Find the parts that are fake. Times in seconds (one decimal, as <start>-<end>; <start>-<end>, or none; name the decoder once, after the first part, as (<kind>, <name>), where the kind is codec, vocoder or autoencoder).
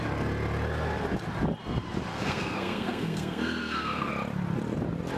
2.1-4.1 (codec, SNAC)